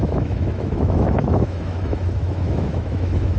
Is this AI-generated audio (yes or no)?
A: yes